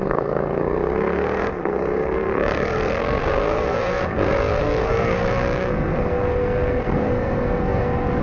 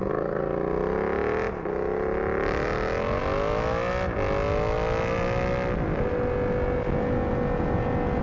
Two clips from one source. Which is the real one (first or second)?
second